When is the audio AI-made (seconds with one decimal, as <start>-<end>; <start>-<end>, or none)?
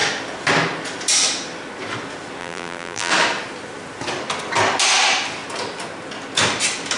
2.4-3.1